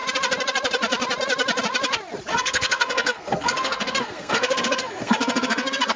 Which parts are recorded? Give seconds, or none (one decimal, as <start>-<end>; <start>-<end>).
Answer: 0.0-2.3